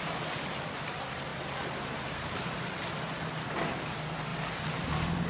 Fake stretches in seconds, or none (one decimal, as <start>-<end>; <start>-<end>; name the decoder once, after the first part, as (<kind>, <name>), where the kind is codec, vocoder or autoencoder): none